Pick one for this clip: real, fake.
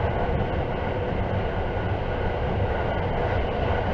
real